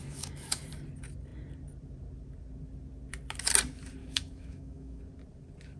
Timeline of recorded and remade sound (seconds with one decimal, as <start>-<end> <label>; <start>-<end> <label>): 0.0-0.6 remade; 0.6-4.0 recorded; 4.0-5.0 remade; 5.0-5.8 recorded